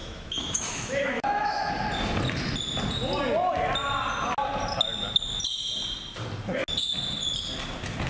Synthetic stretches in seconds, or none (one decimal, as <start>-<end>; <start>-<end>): 0.0-1.7

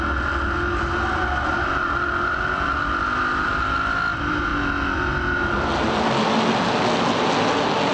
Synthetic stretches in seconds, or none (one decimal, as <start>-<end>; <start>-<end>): none

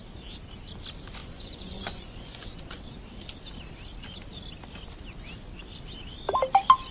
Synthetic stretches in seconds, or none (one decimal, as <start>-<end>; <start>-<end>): 1.2-2.8

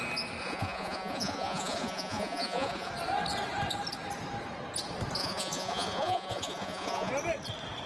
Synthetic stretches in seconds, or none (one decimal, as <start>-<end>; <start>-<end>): 0.4-2.9; 5.2-7.1

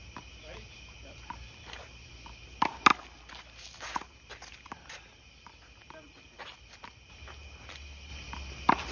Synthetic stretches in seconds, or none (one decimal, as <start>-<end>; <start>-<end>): none

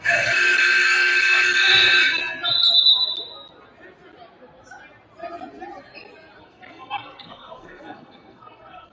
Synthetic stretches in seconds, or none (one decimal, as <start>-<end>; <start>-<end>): 0.0-2.2; 6.4-8.9

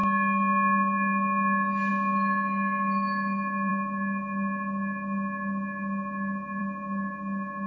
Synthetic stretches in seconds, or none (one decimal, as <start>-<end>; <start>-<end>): none